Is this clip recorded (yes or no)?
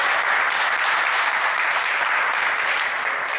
yes